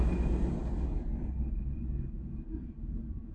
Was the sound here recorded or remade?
recorded